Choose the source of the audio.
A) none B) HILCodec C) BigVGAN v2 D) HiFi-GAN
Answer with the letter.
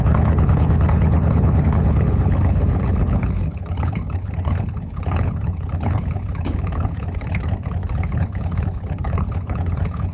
B